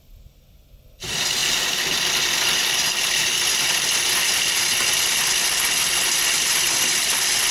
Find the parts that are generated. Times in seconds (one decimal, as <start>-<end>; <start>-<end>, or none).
none